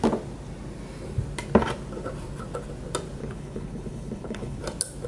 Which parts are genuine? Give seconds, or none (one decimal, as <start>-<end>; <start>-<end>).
0.0-3.2; 4.6-5.1